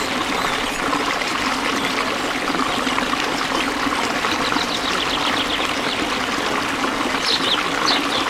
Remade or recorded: recorded